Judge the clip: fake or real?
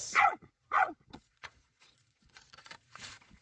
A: fake